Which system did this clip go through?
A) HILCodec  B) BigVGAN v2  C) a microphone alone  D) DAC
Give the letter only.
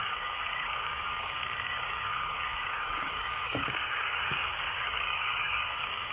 D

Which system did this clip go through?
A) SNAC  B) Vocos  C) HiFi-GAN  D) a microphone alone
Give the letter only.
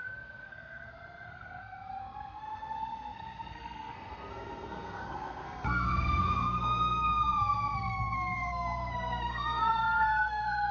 A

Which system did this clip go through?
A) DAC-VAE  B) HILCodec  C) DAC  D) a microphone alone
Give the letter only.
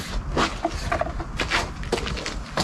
D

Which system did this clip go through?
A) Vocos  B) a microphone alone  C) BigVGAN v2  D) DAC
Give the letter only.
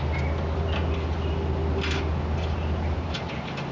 B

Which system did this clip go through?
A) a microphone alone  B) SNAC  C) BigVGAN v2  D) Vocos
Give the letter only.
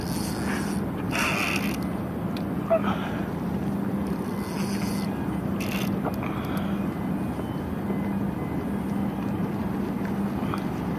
A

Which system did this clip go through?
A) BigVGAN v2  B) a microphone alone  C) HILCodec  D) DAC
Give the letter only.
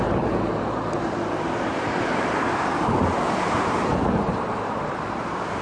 A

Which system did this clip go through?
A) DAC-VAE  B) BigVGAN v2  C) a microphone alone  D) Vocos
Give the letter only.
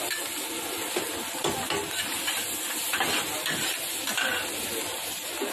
C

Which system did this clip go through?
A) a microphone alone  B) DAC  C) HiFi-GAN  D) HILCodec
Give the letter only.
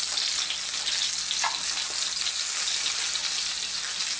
A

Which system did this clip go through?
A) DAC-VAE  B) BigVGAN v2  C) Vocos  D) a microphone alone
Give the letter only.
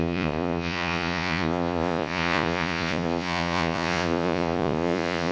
C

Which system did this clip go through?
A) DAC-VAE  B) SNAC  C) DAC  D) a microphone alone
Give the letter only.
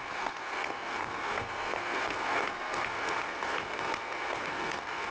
B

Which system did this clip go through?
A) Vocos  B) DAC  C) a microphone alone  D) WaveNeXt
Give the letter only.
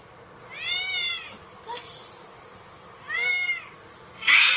C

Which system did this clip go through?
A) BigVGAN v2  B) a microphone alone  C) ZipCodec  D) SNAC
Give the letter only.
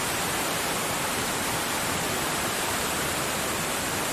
A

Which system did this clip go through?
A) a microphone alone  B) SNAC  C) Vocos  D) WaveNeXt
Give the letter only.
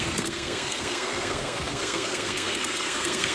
B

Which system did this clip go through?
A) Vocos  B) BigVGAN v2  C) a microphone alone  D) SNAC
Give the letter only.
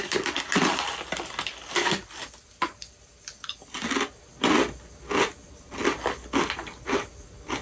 C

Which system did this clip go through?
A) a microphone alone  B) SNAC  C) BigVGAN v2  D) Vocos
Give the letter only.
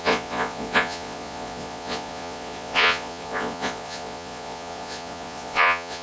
D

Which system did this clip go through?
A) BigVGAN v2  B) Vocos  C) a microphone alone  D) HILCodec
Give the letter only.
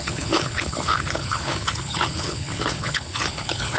D